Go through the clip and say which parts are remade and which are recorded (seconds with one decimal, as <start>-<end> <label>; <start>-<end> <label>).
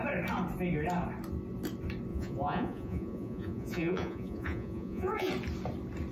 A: 0.0-2.1 recorded; 2.1-5.3 remade; 5.3-6.1 recorded